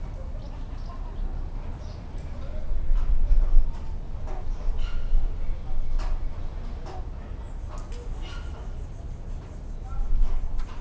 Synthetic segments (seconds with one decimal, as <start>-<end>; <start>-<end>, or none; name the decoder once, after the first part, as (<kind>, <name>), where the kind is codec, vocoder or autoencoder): none